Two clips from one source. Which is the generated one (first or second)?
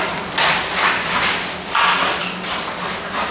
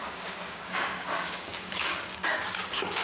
second